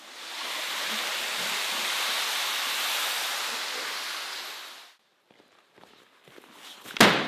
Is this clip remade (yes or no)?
no